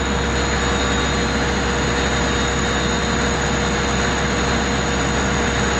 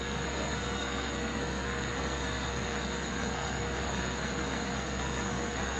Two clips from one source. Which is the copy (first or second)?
second